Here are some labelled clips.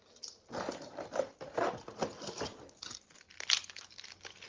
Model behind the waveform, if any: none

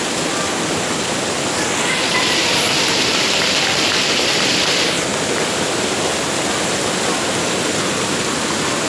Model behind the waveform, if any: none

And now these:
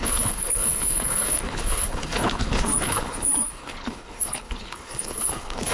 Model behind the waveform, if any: codec, HILCodec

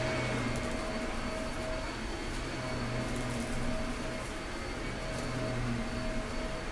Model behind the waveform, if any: none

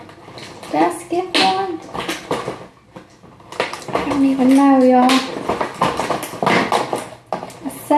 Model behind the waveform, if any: none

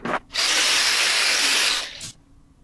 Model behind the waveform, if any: none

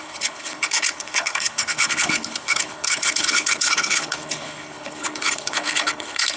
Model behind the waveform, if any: codec, HILCodec